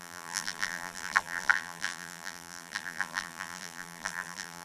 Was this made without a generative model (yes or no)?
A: no